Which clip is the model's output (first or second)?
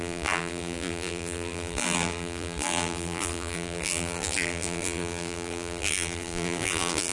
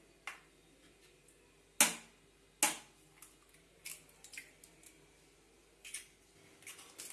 first